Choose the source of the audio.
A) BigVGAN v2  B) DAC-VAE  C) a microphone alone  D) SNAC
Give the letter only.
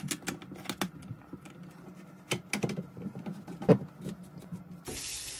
C